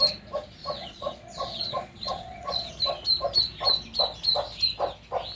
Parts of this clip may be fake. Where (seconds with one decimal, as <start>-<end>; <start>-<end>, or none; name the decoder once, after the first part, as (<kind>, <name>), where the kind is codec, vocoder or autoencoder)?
0.6-2.7 (vocoder, Vocos)